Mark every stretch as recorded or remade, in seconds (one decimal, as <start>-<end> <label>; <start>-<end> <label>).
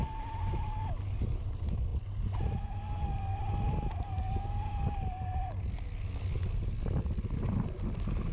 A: 0.0-8.3 recorded